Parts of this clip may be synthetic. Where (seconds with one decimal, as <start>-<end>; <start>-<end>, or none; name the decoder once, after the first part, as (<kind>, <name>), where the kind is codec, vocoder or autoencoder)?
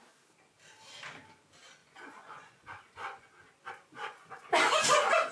1.8-3.3 (vocoder, Vocos); 3.9-4.5